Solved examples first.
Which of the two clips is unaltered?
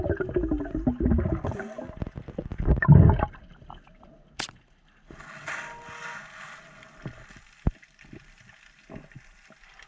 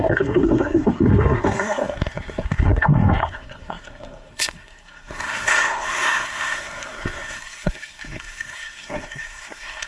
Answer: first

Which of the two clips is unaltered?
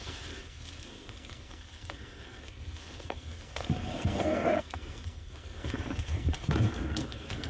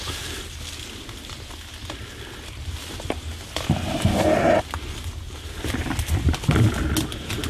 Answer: second